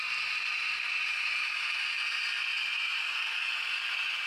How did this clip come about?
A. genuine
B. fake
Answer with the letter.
A